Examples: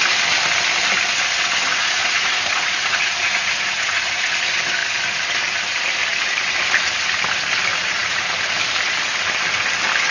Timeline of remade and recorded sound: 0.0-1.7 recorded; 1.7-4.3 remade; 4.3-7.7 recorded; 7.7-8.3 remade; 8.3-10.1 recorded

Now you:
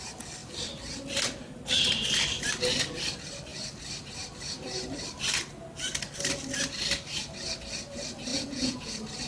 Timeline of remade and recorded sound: 0.0-8.3 recorded; 8.3-8.9 remade; 8.9-9.3 recorded

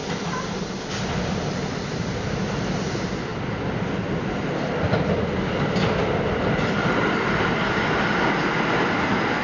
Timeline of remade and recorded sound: 0.0-9.4 recorded

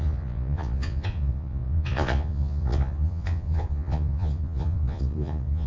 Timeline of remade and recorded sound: 0.0-5.7 remade